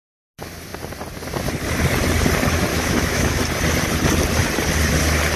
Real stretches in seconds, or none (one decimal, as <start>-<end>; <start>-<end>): 0.0-2.7; 3.4-5.4